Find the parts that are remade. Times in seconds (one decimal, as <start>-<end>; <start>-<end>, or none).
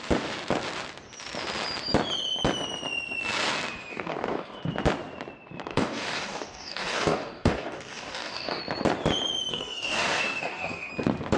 3.9-4.6; 5.7-8.6; 9.5-10.9